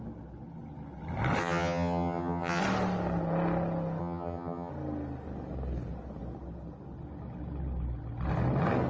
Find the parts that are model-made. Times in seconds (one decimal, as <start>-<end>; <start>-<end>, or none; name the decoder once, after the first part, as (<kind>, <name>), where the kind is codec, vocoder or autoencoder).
1.4-2.6 (vocoder, HiFi-GAN); 4.0-4.7